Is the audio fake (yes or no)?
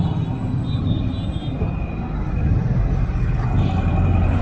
no